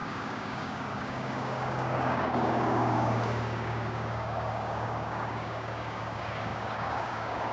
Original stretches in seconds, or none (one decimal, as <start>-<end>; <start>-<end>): none